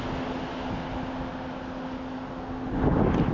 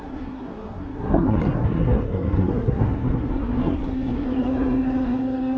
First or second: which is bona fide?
first